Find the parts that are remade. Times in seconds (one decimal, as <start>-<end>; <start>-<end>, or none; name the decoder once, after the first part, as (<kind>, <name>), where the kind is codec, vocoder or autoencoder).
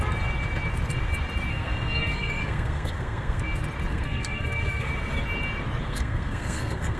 1.5-3.4 (codec, SNAC); 3.9-4.9; 5.8-7.0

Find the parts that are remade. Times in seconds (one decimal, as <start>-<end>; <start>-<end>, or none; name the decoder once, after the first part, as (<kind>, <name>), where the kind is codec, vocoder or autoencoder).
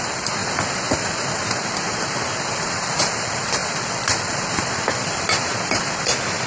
none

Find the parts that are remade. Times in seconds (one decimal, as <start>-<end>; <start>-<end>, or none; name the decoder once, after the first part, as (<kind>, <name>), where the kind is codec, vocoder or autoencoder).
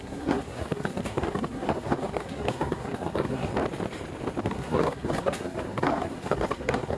0.0-3.5 (codec, SNAC); 4.4-7.0